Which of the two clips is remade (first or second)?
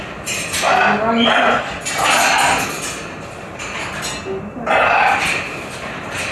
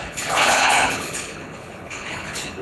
second